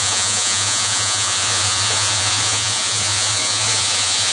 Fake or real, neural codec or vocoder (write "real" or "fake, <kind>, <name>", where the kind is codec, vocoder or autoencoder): fake, vocoder, Vocos